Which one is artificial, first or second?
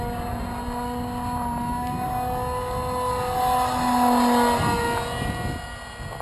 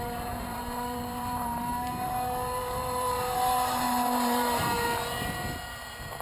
second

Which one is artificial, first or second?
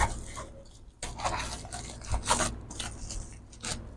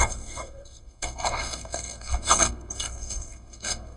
second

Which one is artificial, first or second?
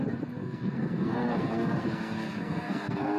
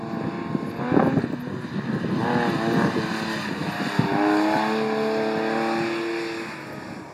first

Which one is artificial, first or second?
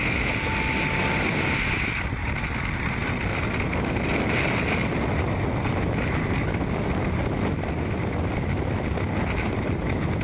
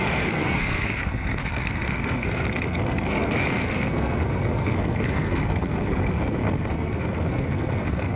second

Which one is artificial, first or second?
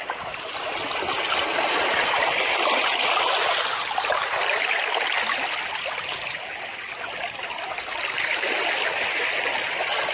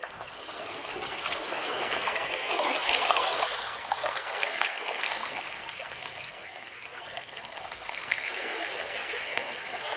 second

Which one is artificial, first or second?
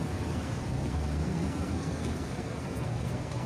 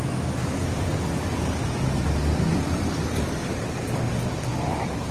first